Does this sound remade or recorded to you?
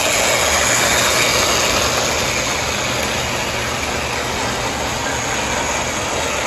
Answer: recorded